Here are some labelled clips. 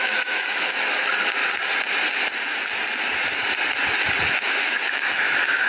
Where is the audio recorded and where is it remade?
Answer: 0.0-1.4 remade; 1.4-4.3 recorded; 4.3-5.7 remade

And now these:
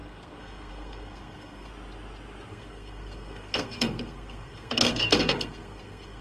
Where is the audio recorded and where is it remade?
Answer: 0.0-1.7 remade; 1.7-2.5 recorded; 2.5-6.2 remade